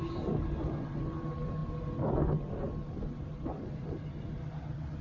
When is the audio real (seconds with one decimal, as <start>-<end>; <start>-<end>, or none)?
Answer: 0.0-5.0